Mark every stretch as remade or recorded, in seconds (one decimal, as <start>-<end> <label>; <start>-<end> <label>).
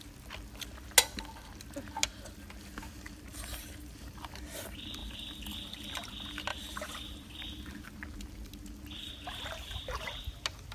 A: 0.0-3.3 recorded; 3.3-3.9 remade; 3.9-5.0 recorded; 5.0-6.1 remade; 6.1-6.5 recorded; 6.5-7.4 remade; 7.4-10.7 recorded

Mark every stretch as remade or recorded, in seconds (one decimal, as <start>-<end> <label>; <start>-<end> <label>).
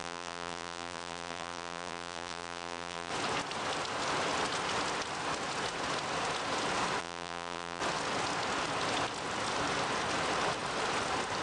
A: 0.0-3.1 remade; 3.1-7.0 recorded; 7.0-7.8 remade; 7.8-11.4 recorded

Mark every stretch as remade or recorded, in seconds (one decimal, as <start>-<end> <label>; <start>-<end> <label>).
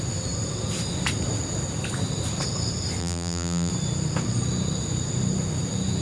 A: 0.0-3.0 recorded; 3.0-3.7 remade; 3.7-6.0 recorded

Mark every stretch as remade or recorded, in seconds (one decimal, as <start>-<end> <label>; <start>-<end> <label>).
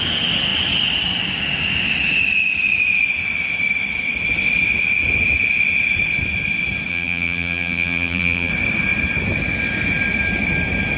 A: 0.0-6.9 recorded; 6.9-8.5 remade; 8.5-11.0 recorded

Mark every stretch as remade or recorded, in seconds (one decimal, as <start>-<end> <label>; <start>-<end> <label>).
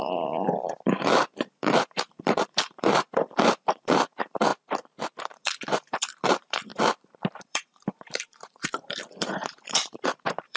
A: 0.0-4.5 remade; 4.5-5.2 recorded; 5.2-6.7 remade; 6.7-7.4 recorded; 7.4-10.6 remade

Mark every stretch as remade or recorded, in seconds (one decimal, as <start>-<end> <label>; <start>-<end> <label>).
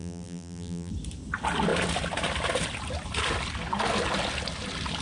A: 0.0-0.9 remade; 0.9-5.0 recorded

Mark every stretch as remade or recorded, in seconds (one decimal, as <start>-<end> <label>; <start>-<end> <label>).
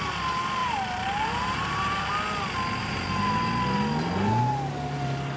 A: 0.0-0.6 recorded; 0.6-2.1 remade; 2.1-2.8 recorded; 2.8-3.4 remade; 3.4-5.4 recorded